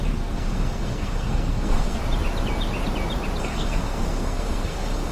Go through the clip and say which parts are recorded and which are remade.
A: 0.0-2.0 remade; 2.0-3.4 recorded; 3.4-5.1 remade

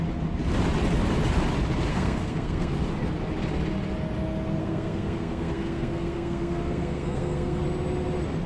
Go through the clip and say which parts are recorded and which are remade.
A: 0.0-1.9 recorded; 1.9-2.7 remade; 2.7-4.6 recorded; 4.6-7.6 remade; 7.6-8.5 recorded